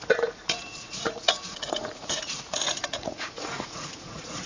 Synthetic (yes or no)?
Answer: yes